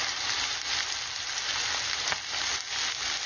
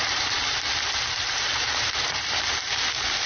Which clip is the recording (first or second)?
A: first